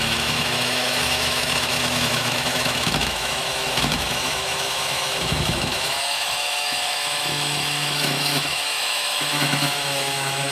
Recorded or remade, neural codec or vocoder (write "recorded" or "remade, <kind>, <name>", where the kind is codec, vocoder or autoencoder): remade, autoencoder, DAC-VAE